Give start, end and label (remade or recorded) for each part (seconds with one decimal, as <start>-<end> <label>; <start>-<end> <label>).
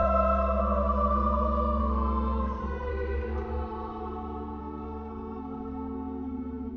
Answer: 0.0-1.8 recorded; 1.8-2.9 remade; 2.9-4.6 recorded; 4.6-6.8 remade